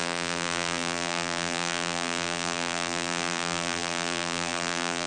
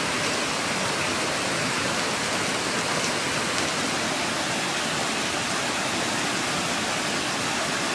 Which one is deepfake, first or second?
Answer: first